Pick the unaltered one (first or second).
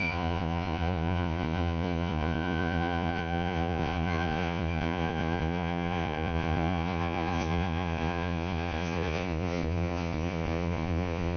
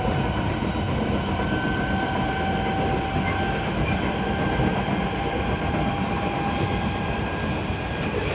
second